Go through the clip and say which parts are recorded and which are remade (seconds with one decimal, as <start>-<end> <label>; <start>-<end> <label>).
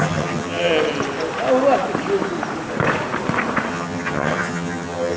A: 0.0-0.7 remade; 0.7-3.7 recorded; 3.7-5.2 remade